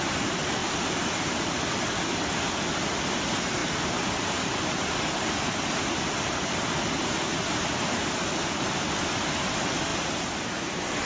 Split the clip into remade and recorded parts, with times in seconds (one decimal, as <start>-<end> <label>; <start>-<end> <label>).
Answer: 0.0-11.1 recorded